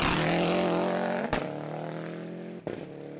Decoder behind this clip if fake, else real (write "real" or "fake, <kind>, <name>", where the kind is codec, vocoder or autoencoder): real